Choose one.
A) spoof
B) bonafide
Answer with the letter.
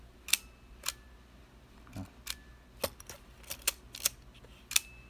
B